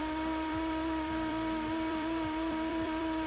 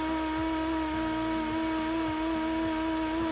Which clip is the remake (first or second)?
first